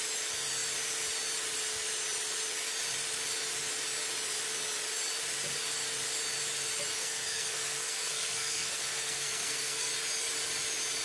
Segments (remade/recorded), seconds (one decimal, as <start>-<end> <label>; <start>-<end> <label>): 0.0-7.0 recorded; 7.0-9.9 remade; 9.9-11.0 recorded